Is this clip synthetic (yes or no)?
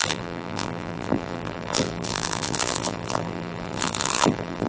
yes